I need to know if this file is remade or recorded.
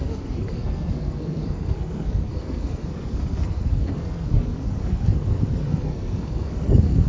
remade